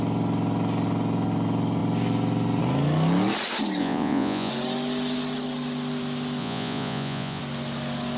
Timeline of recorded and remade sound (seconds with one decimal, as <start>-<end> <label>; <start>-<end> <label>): 0.0-3.8 recorded; 3.8-4.5 remade; 4.5-6.4 recorded; 6.4-7.4 remade; 7.4-8.2 recorded